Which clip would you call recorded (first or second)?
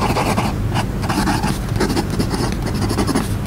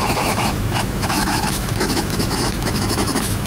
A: first